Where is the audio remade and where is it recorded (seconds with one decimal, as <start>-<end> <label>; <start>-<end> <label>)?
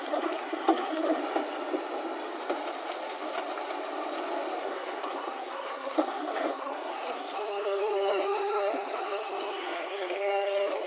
0.0-1.2 remade; 1.2-4.6 recorded; 4.6-10.9 remade